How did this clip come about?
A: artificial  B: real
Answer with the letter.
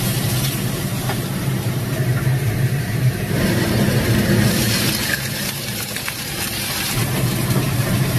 A